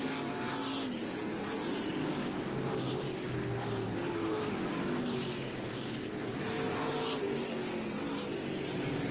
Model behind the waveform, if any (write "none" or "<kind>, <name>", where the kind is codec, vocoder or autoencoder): none